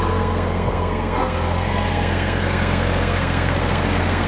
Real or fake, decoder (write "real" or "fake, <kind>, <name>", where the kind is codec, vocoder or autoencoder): fake, codec, SNAC